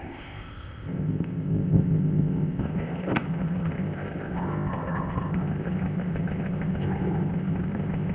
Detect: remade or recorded remade